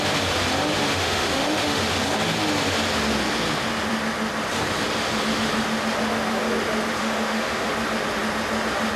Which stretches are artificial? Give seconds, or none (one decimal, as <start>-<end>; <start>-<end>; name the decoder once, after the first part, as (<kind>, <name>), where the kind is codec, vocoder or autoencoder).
0.9-1.8 (autoencoder, DAC-VAE); 7.0-7.7